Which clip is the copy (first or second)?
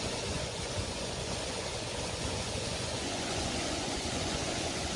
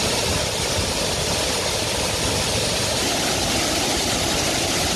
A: first